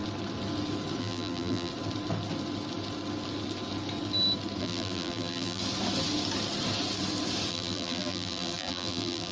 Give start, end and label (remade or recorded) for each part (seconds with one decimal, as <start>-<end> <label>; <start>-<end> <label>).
0.0-1.0 recorded; 1.0-1.7 remade; 1.7-4.6 recorded; 4.6-5.6 remade; 5.6-7.5 recorded; 7.5-9.3 remade